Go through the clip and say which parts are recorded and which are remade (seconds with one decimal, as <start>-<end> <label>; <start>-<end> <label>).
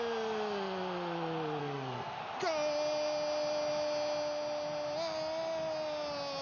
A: 0.0-1.6 recorded; 1.6-2.2 remade; 2.2-6.4 recorded